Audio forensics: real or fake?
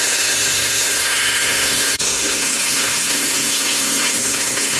fake